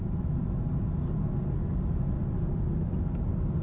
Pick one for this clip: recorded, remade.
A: recorded